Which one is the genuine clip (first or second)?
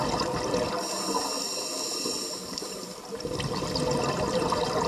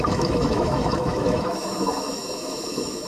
first